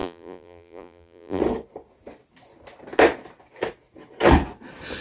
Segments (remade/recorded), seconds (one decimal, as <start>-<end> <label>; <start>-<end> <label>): 0.0-1.4 remade; 1.4-5.0 recorded